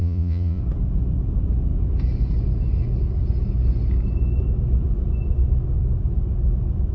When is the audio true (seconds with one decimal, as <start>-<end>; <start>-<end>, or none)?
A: 0.6-6.9